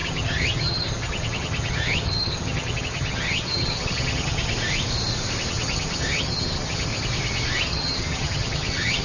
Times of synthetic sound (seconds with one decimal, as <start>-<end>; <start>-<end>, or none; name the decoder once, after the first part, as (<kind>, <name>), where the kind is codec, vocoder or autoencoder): 0.0-4.5 (vocoder, HiFi-GAN); 5.5-6.9; 7.6-9.0